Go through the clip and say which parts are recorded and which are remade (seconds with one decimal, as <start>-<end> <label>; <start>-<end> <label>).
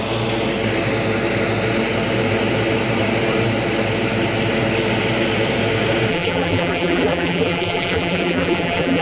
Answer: 0.0-6.1 recorded; 6.1-9.0 remade